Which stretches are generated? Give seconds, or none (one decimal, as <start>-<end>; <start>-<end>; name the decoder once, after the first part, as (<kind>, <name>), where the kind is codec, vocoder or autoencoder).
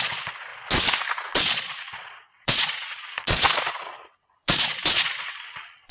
0.0-0.5 (vocoder, Vocos); 1.2-5.9